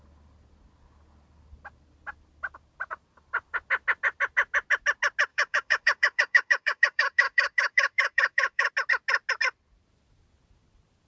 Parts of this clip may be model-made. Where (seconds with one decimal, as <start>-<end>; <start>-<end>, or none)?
5.3-8.7